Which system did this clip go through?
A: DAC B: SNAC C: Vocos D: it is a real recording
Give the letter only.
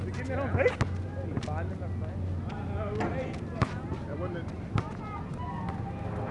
D